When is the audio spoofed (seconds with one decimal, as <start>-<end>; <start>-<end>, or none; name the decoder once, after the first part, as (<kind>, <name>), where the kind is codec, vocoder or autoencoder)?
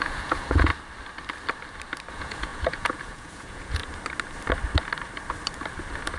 0.0-0.7 (vocoder, Vocos); 2.1-3.8